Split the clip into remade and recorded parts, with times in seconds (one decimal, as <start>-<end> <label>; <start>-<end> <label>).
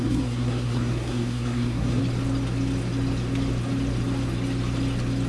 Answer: 0.0-2.0 remade; 2.0-5.3 recorded